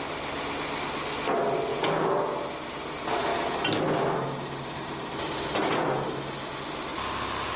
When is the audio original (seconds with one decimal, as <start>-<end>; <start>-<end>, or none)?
0.0-1.7; 2.2-7.6